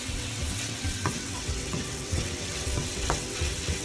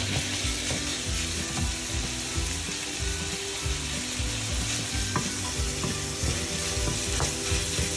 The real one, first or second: second